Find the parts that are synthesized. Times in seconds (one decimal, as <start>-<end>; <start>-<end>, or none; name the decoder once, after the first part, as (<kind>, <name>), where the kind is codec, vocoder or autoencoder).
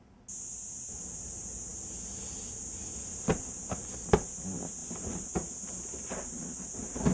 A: none